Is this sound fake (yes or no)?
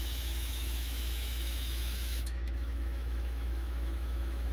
yes